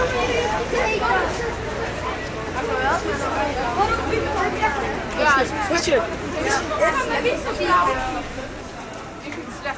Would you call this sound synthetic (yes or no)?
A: no